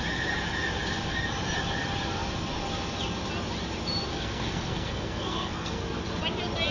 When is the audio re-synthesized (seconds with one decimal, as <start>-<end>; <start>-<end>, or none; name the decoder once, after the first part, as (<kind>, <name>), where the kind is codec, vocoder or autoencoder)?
4.1-5.8 (codec, SNAC)